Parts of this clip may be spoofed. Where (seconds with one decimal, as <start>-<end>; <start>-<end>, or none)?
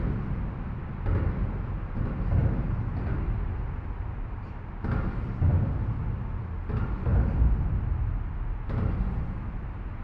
none